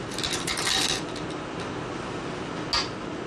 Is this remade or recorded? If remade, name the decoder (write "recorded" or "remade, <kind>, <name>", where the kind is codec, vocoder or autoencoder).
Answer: recorded